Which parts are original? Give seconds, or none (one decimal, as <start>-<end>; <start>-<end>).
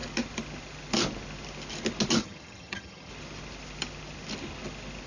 0.0-2.2; 3.1-5.1